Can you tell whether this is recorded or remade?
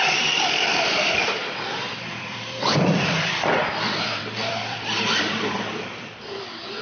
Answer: remade